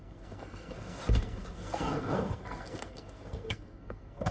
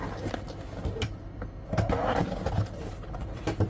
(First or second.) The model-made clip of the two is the first